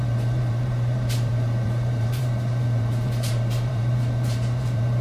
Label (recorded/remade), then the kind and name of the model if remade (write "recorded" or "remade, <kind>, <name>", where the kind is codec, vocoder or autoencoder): remade, vocoder, BigVGAN v2